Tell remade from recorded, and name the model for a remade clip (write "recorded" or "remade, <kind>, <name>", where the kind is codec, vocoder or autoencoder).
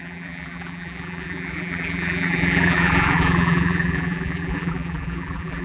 remade, vocoder, BigVGAN v2